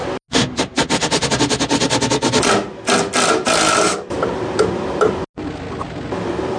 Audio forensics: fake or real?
real